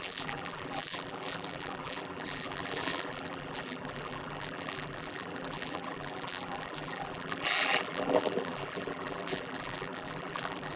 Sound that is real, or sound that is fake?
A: fake